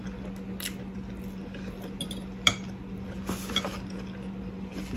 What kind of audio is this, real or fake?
real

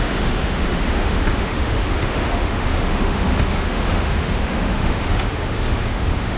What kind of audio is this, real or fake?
fake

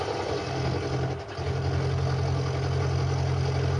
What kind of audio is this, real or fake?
real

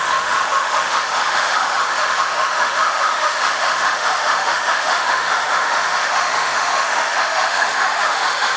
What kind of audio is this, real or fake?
fake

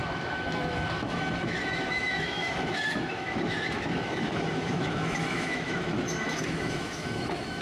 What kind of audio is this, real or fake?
fake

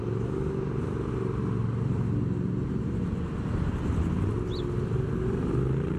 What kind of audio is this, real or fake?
real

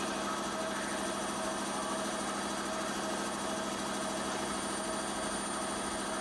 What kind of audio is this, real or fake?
real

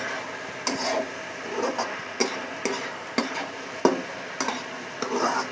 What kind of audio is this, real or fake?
real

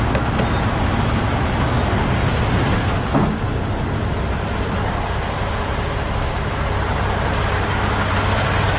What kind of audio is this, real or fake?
real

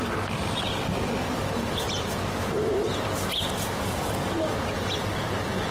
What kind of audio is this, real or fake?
real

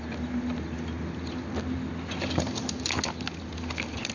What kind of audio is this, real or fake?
real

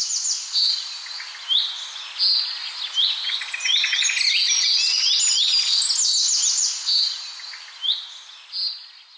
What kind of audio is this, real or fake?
real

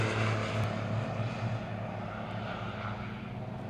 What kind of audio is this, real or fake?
real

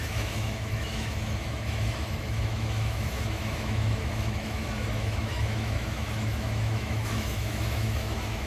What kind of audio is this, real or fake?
fake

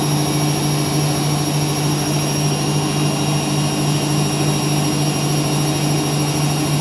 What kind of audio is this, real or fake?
real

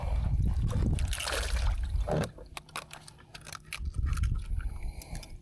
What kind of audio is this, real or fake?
real